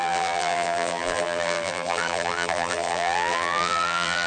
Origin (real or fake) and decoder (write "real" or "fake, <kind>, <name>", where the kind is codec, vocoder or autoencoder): fake, vocoder, BigVGAN v2